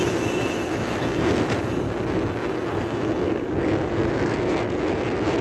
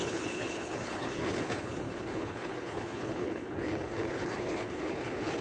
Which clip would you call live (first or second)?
first